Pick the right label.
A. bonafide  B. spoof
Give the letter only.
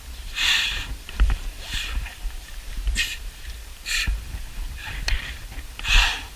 B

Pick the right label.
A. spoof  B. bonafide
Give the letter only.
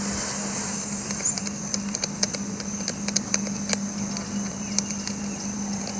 B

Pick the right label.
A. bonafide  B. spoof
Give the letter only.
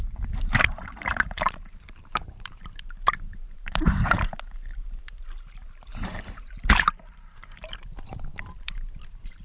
B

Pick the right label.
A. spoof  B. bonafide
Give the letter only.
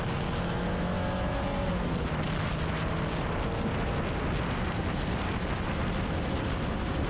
B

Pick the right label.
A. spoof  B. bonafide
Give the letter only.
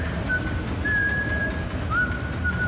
B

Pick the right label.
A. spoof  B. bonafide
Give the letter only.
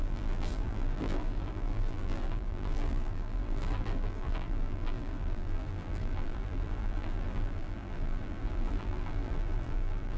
A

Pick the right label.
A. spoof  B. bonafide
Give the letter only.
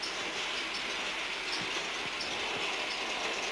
B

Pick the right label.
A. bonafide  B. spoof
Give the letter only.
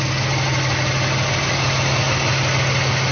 A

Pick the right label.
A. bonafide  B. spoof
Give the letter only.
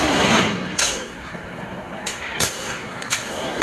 B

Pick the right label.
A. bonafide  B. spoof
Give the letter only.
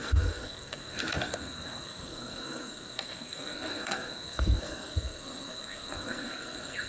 B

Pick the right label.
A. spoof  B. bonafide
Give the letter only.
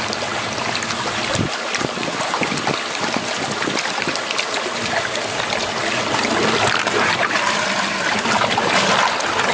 B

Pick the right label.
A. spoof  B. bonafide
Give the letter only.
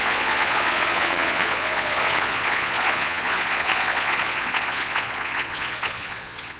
A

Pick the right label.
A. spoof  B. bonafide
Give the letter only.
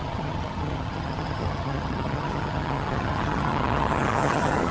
A